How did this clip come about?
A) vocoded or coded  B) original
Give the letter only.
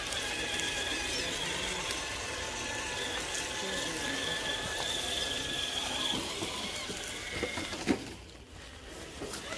B